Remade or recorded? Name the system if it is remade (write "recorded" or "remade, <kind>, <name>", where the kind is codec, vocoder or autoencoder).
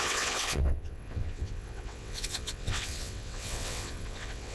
remade, vocoder, WaveNeXt